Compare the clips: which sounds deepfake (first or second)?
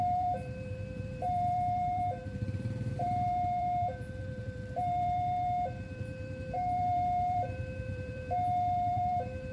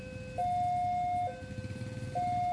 first